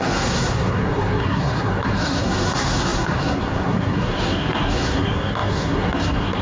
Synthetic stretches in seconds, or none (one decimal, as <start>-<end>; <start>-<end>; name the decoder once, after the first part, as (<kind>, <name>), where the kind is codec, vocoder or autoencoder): 0.0-6.4 (codec, SNAC)